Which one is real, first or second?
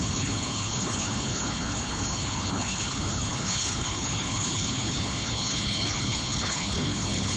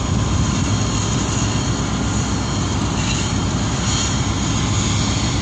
second